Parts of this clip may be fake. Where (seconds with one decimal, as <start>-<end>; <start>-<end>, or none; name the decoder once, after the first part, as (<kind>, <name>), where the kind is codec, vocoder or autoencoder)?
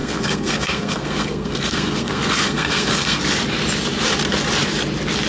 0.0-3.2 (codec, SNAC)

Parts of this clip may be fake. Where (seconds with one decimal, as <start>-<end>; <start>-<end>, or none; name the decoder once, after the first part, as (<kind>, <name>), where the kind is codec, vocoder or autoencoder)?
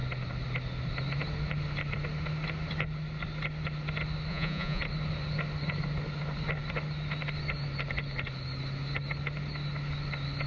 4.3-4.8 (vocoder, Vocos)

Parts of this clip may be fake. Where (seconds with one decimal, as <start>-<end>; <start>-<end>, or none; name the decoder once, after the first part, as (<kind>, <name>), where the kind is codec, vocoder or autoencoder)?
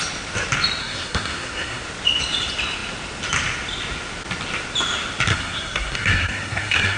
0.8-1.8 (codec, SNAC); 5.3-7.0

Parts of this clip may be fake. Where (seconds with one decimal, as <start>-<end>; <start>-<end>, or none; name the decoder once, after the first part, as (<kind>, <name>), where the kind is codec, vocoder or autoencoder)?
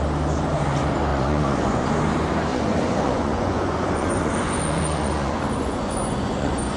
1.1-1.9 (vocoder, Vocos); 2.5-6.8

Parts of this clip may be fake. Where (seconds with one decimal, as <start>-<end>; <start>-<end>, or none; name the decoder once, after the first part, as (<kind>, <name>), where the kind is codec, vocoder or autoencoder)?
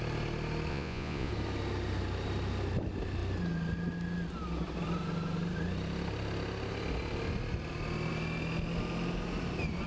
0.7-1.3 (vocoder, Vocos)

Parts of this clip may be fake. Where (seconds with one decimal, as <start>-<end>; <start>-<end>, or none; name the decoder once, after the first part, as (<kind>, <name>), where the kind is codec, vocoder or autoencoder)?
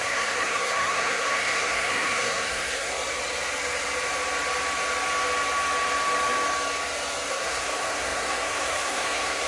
0.0-2.9 (codec, SNAC); 7.3-9.5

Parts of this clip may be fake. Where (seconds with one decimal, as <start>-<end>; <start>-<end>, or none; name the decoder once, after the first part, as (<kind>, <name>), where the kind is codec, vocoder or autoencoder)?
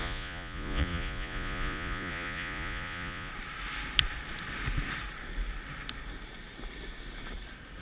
0.0-3.3 (vocoder, Vocos)